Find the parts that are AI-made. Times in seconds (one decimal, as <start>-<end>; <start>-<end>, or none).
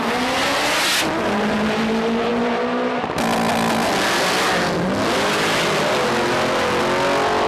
none